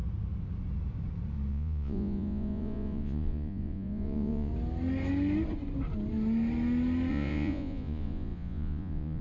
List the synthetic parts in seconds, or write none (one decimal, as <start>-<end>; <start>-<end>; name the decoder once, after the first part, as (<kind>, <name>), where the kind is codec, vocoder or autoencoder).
1.5-4.5 (vocoder, Vocos); 7.1-9.2